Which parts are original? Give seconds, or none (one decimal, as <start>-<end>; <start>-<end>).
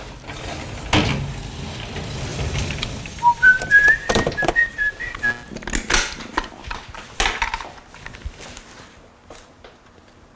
0.0-2.3; 4.6-10.4